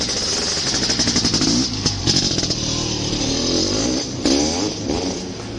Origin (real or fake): real